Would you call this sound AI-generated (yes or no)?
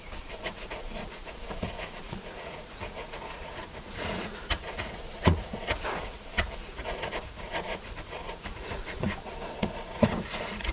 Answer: yes